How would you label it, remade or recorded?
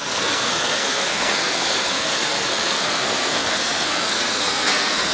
remade